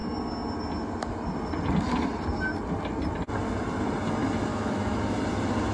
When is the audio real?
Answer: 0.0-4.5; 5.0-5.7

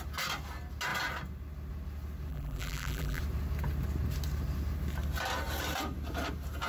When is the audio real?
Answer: 0.0-2.3; 3.2-6.7